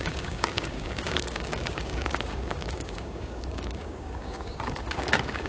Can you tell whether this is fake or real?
fake